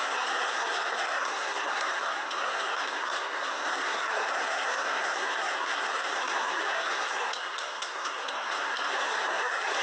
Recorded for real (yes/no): no